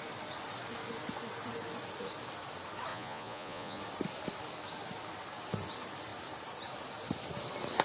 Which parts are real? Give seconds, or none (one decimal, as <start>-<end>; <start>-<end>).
0.0-2.9; 3.8-7.8